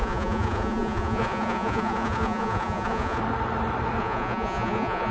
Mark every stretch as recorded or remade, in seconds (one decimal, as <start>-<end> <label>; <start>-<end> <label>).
0.0-3.2 remade; 3.2-4.0 recorded; 4.0-5.1 remade